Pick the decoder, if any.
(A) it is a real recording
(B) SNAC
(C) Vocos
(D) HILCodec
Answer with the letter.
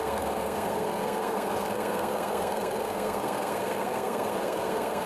B